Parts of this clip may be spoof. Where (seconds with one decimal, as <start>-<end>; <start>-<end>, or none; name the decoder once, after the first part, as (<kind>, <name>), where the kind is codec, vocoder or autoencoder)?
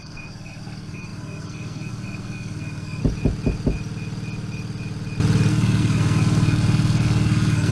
0.0-3.0 (codec, SNAC); 5.5-7.7